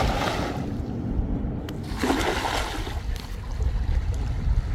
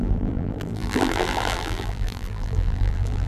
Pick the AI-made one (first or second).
second